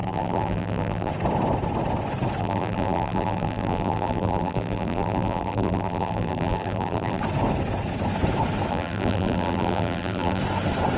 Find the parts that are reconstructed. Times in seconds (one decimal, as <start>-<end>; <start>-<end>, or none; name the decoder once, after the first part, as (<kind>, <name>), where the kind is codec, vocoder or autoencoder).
0.0-1.1 (vocoder, BigVGAN v2); 2.4-7.2; 8.7-10.4